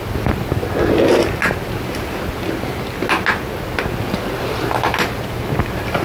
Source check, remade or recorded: recorded